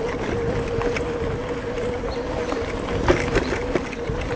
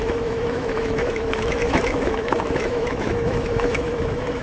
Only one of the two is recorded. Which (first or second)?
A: first